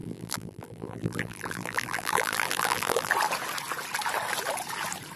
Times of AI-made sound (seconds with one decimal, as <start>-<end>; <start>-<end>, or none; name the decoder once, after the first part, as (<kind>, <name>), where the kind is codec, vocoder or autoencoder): 0.0-3.1 (vocoder, BigVGAN v2)